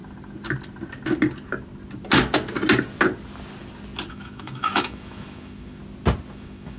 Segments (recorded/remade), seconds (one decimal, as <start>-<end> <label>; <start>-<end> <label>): 0.0-4.1 recorded; 4.1-5.8 remade; 5.8-6.3 recorded; 6.3-6.8 remade